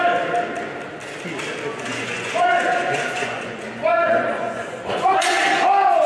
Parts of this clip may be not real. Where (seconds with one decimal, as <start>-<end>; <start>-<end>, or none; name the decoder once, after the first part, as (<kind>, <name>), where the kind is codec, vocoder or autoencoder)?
1.7-5.4 (vocoder, Vocos)